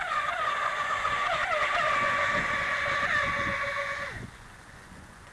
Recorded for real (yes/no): no